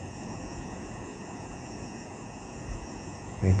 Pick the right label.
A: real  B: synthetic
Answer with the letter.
B